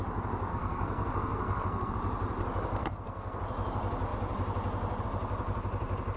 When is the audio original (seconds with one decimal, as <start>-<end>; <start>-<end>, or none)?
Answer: 0.0-0.5; 1.9-2.8; 3.4-6.2